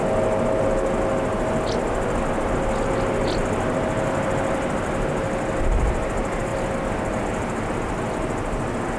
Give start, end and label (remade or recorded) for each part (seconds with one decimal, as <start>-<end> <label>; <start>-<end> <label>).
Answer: 0.0-9.0 recorded